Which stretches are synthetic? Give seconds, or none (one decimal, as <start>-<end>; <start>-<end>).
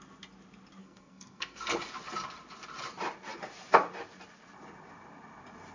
0.8-1.7